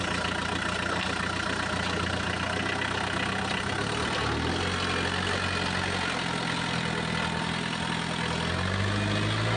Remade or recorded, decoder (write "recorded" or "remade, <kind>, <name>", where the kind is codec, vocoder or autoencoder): recorded